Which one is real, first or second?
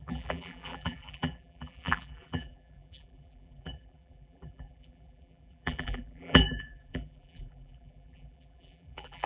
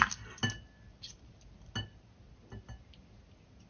second